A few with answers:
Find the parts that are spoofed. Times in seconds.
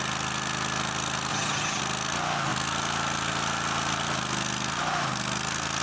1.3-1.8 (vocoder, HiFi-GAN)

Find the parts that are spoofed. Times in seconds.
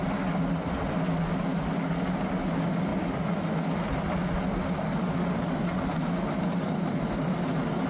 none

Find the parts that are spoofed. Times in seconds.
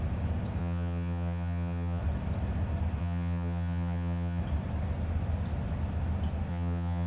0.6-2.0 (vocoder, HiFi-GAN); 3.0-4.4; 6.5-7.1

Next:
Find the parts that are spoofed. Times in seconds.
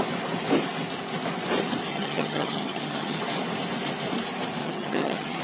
1.9-3.2 (vocoder, HiFi-GAN); 4.6-5.4